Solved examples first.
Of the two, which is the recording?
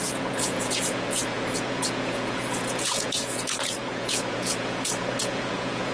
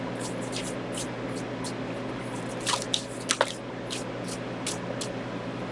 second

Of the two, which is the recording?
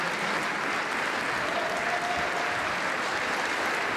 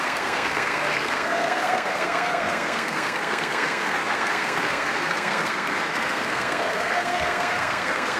first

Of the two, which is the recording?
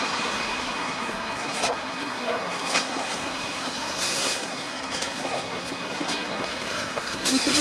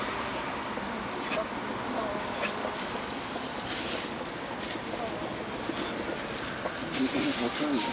second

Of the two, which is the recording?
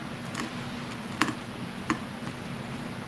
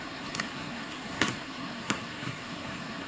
first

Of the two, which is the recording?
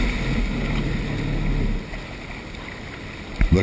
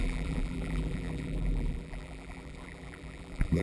first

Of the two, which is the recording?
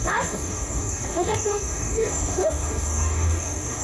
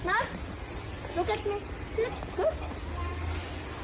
second